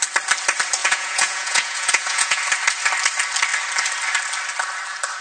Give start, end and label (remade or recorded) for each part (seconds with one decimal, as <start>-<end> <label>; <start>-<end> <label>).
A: 0.0-0.8 recorded; 0.8-2.4 remade; 2.4-5.2 recorded